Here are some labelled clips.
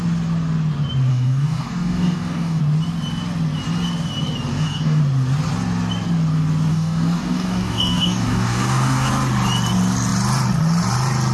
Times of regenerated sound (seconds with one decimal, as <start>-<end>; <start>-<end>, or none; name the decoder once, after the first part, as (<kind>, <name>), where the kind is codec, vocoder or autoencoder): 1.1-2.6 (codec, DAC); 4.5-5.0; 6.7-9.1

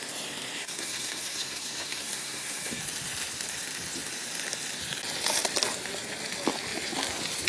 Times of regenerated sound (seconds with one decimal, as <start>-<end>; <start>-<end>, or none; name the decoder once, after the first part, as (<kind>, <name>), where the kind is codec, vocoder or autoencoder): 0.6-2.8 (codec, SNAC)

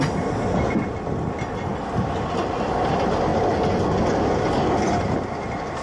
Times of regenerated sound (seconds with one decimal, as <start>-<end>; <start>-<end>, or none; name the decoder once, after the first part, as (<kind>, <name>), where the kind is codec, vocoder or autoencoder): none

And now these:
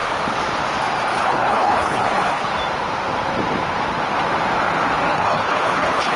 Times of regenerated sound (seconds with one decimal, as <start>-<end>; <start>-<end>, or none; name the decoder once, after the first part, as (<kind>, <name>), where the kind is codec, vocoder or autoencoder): 1.2-2.5 (codec, HILCodec); 5.1-6.2

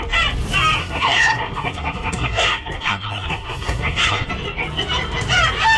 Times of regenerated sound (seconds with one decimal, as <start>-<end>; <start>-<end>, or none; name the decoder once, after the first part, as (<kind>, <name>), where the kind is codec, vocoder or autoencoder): 0.8-4.3 (codec, SNAC)

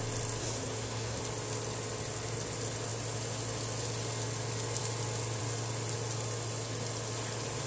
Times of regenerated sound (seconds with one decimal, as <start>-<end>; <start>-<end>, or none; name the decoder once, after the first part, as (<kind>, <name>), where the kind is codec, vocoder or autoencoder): 0.4-1.2 (codec, SNAC)

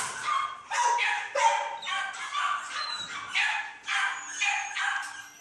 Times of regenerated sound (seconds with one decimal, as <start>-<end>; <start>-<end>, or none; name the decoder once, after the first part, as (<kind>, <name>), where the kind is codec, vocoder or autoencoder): none

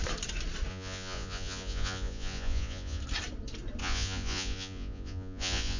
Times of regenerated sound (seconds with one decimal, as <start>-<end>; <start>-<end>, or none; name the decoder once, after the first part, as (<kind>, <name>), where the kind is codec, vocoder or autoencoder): 0.7-3.0 (vocoder, Vocos); 3.8-5.8